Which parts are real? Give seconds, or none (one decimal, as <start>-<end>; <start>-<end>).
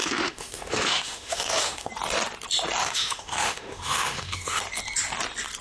1.9-2.8; 4.6-5.6